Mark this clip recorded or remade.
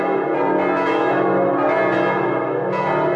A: recorded